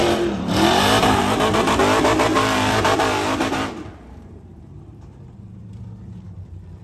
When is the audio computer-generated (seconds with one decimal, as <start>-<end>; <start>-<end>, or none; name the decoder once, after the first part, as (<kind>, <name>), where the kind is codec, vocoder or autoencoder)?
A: 0.0-1.2 (vocoder, BigVGAN v2); 2.3-6.8